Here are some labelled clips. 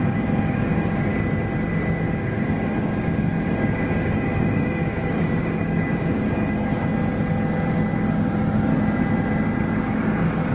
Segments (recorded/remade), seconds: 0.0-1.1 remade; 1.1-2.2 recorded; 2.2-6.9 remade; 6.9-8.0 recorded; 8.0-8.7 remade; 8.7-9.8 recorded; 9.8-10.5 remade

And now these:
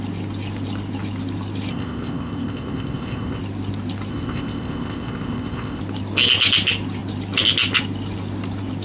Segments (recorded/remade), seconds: 0.0-1.7 recorded; 1.7-3.4 remade; 3.4-4.1 recorded; 4.1-5.8 remade; 5.8-8.8 recorded